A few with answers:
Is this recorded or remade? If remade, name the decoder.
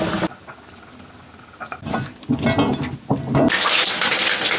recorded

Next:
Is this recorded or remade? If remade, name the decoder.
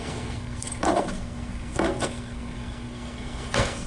remade, codec, SNAC